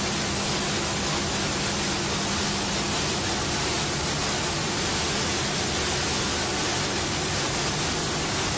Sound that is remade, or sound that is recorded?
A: recorded